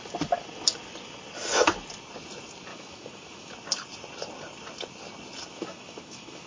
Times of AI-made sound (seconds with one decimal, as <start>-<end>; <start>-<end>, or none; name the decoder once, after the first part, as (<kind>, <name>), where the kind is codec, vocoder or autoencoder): 2.7-3.5 (autoencoder, DAC-VAE); 5.5-6.5